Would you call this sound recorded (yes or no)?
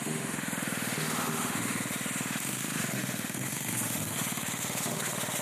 no